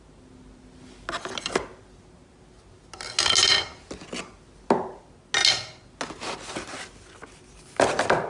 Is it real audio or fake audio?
real